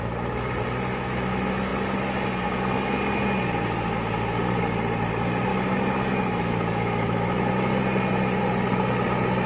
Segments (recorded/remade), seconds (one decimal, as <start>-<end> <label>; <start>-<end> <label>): 0.0-5.5 recorded; 5.5-7.5 remade; 7.5-9.5 recorded